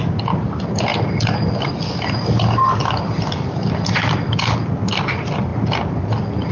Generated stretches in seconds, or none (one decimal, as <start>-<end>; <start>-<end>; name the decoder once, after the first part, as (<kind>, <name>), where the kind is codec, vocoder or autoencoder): none